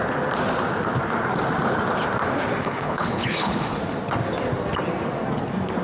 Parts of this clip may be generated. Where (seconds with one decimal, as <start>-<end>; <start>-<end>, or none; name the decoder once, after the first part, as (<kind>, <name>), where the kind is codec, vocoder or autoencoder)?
2.6-3.8 (codec, HILCodec)